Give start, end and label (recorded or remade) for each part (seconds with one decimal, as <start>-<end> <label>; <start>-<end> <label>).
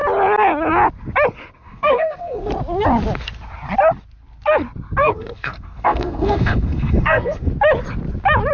0.0-1.6 recorded; 1.6-2.5 remade; 2.5-5.0 recorded; 5.0-7.5 remade; 7.5-8.5 recorded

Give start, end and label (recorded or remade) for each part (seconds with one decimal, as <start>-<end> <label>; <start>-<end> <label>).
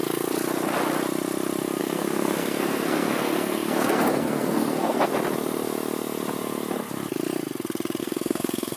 0.0-1.8 recorded; 1.8-5.1 remade; 5.1-8.0 recorded; 8.0-8.8 remade